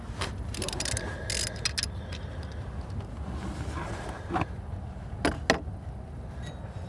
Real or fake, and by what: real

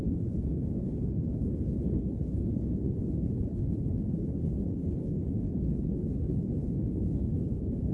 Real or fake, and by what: fake, codec, HILCodec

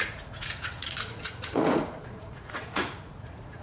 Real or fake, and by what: fake, vocoder, Vocos